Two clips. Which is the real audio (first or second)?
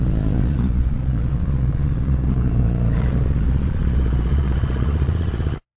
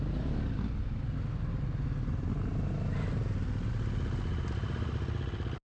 second